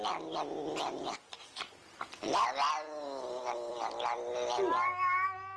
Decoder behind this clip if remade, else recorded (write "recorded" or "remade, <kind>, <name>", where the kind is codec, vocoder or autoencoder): recorded